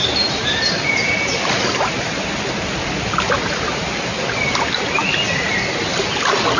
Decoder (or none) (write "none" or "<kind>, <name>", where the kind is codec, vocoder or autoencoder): none